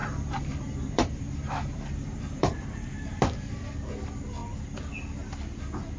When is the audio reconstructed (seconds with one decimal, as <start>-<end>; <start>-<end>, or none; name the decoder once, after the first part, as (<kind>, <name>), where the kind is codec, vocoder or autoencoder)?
0.0-3.6 (vocoder, BigVGAN v2)